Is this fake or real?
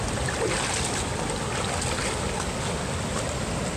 real